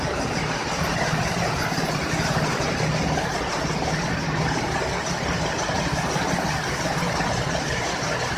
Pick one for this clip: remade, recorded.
recorded